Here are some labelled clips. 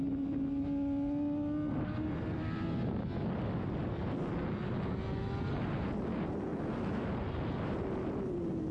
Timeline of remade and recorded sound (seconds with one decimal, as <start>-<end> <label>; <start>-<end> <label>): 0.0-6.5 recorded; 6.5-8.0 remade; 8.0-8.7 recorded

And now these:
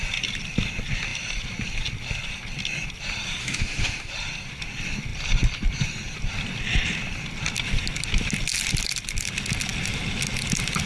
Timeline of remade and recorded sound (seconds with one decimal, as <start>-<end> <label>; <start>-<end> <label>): 0.0-3.4 recorded; 3.4-4.1 remade; 4.1-10.9 recorded

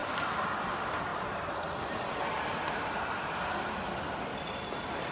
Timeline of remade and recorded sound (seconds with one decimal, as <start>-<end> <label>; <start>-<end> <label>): 0.0-5.1 recorded